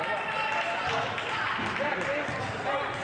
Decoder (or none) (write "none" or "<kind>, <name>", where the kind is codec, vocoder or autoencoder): vocoder, BigVGAN v2